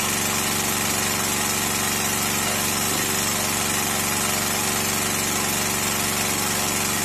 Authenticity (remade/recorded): recorded